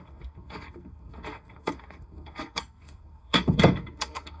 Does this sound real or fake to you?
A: fake